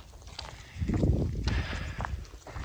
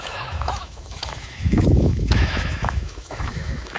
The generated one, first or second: second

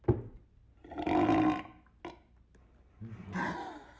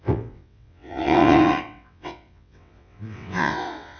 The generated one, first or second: second